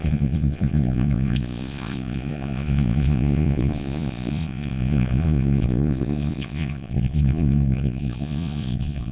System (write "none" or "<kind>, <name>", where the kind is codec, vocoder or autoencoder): vocoder, Vocos